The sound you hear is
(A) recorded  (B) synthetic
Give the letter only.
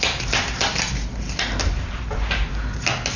A